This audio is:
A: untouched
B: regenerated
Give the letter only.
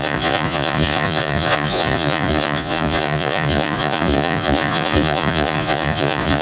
B